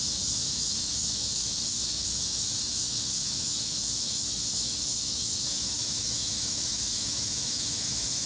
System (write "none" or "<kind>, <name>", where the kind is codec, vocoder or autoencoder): autoencoder, DAC-VAE